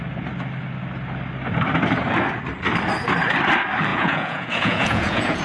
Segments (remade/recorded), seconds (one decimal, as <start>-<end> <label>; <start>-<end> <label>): 0.0-3.9 recorded; 3.9-5.4 remade